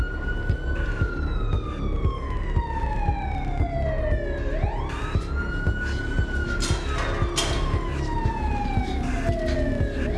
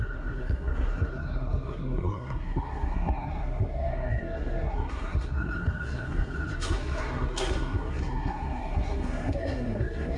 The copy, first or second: second